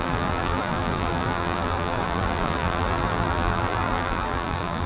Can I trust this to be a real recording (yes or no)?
no